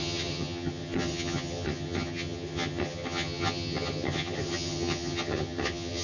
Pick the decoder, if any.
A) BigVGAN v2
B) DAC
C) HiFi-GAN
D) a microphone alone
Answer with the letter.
C